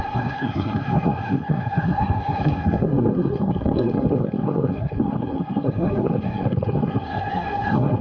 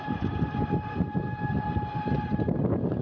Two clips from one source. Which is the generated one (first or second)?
first